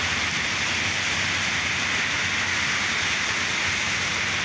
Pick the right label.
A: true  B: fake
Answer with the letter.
A